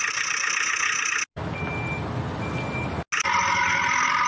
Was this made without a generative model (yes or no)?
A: yes